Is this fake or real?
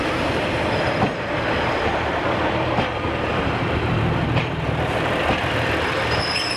fake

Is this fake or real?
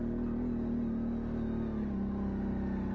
real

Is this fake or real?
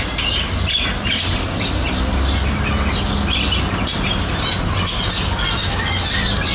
real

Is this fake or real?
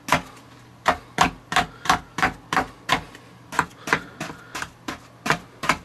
real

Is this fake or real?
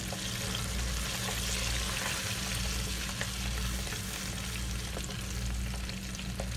real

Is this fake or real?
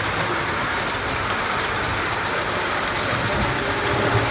real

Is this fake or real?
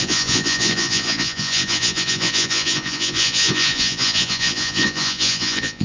fake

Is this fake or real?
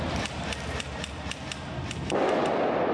real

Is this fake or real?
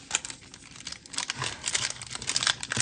real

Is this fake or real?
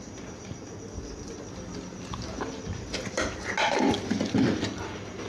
real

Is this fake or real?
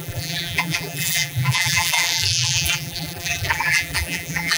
fake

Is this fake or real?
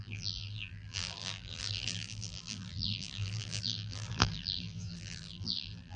fake